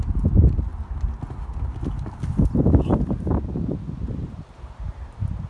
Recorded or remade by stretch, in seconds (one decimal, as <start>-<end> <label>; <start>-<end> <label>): 0.0-0.7 remade; 0.7-4.0 recorded; 4.0-5.5 remade